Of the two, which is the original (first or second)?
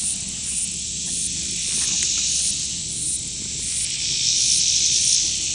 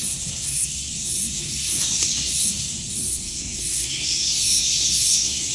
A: first